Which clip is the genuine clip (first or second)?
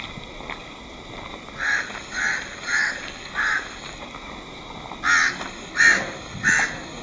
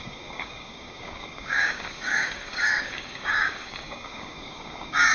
first